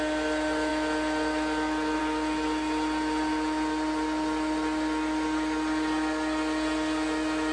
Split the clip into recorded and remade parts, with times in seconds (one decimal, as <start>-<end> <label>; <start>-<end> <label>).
0.0-7.5 recorded